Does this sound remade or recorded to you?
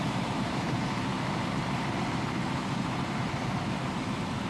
remade